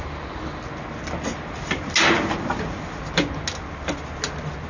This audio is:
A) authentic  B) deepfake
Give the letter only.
A